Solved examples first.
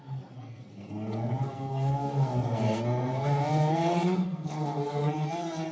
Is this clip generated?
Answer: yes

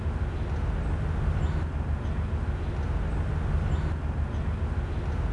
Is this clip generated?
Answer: no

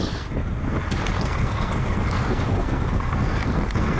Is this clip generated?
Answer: yes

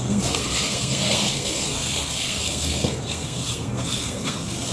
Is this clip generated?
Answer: yes